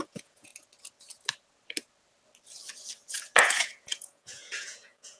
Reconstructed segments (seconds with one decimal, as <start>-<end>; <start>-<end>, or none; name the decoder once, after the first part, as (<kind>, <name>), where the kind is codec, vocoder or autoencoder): 0.0-0.5 (vocoder, Vocos); 3.4-5.2